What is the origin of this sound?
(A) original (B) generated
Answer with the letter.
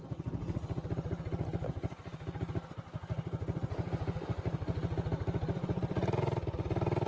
A